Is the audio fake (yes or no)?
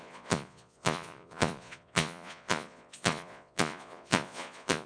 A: yes